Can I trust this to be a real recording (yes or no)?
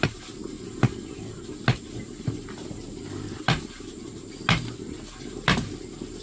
yes